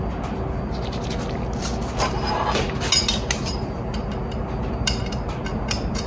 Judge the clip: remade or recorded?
recorded